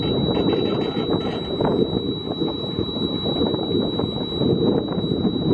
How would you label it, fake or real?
real